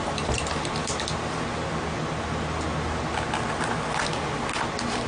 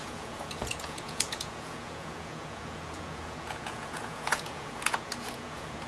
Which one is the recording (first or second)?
first